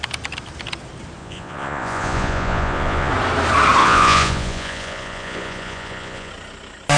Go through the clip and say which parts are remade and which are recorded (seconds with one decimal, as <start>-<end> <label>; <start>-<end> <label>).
0.0-1.2 recorded; 1.2-3.1 remade; 3.1-3.8 recorded; 3.8-6.3 remade; 6.3-7.0 recorded